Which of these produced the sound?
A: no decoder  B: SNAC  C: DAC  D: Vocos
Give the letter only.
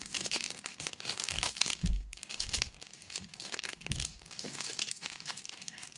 C